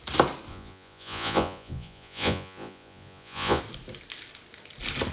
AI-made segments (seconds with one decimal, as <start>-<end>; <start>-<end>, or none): 0.5-3.6

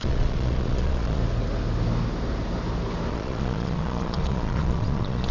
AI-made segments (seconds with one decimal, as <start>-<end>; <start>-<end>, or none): 0.0-1.2; 3.1-5.3

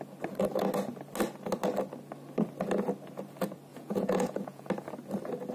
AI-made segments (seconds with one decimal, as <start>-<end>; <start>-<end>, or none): 3.7-4.7

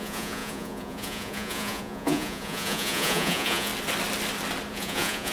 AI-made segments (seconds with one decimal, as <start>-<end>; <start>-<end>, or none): 0.0-3.7; 4.7-5.3

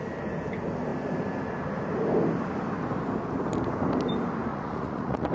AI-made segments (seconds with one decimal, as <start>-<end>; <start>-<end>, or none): 4.5-5.3

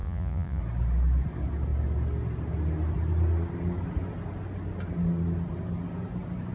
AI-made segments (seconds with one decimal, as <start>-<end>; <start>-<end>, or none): 0.0-0.6